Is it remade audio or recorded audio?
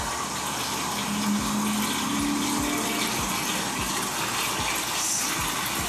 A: recorded